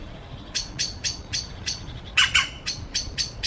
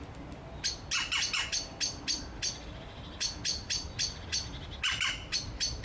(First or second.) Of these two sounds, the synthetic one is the first